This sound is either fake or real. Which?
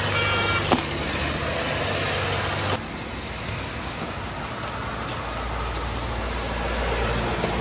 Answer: real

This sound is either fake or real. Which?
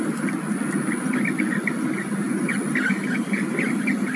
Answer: real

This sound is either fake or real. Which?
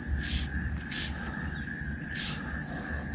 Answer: real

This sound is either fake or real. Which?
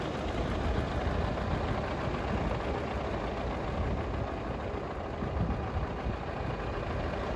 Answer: real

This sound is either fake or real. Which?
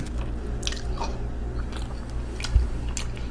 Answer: real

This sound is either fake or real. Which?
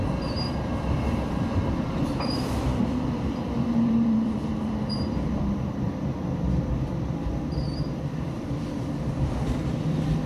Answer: fake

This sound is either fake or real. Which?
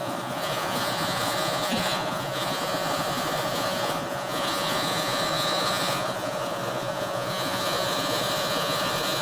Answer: fake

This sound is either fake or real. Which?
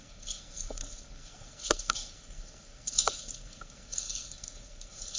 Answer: fake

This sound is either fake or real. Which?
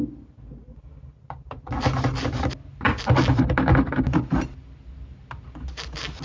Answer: real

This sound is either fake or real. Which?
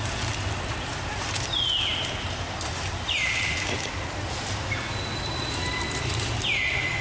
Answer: real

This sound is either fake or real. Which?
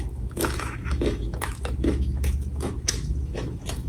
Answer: fake